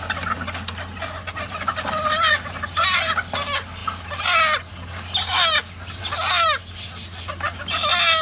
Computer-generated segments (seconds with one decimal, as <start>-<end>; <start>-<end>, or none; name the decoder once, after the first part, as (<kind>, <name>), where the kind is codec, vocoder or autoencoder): none

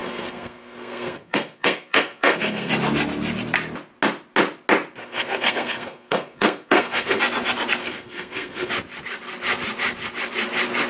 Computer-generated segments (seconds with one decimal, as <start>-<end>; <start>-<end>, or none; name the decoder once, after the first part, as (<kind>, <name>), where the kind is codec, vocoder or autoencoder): 0.0-2.7 (codec, SNAC); 5.0-7.2; 7.8-8.7